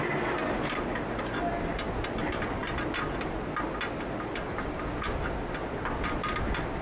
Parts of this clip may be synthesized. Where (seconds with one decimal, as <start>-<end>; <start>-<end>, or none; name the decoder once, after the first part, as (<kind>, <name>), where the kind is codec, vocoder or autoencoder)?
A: none